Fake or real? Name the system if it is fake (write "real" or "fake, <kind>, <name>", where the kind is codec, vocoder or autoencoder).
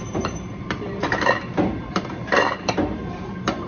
fake, vocoder, BigVGAN v2